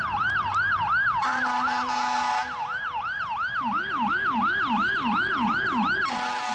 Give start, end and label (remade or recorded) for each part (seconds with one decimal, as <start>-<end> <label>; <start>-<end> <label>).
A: 0.0-6.5 recorded